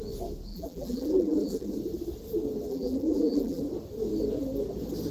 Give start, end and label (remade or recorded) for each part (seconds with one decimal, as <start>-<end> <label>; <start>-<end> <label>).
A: 0.0-0.5 recorded; 0.5-1.7 remade; 1.7-2.7 recorded; 2.7-3.6 remade; 3.6-5.1 recorded